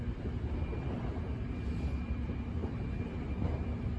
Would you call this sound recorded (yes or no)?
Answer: no